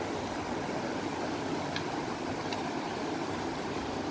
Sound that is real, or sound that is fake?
real